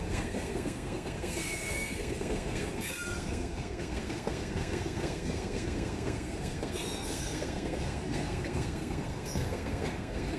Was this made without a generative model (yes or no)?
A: no